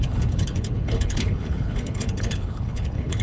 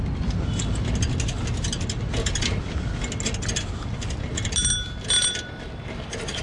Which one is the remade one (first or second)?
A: first